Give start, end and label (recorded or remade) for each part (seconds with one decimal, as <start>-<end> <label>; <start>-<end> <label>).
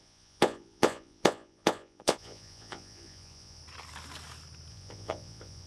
0.0-3.6 remade; 3.6-4.7 recorded; 4.7-5.7 remade